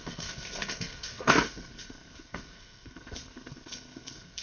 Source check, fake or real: fake